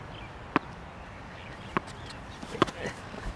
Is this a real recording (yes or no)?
yes